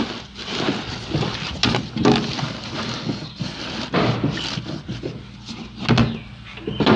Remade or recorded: recorded